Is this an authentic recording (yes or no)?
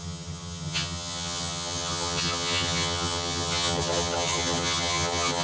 no